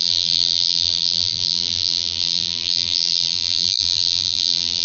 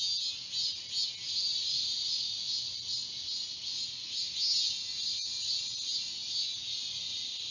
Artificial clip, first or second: first